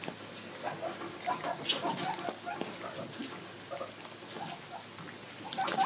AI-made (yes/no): no